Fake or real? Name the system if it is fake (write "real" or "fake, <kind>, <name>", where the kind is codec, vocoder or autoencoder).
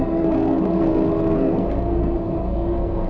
fake, codec, SNAC